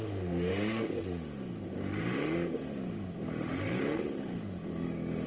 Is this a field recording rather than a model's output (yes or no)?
no